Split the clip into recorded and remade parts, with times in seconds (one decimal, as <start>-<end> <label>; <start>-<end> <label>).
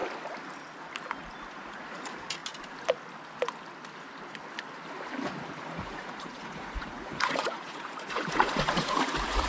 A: 0.0-1.5 recorded; 1.5-2.4 remade; 2.4-5.6 recorded; 5.6-9.5 remade